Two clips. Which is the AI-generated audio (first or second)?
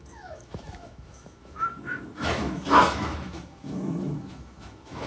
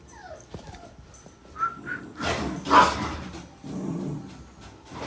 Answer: first